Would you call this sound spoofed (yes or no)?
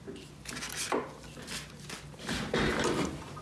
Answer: no